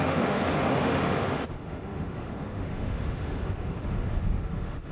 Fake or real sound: fake